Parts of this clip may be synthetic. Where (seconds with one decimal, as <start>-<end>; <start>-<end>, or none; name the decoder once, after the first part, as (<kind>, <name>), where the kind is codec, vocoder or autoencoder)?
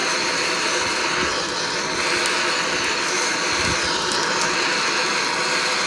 none